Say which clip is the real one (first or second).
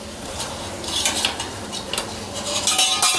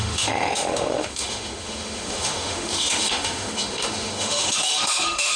first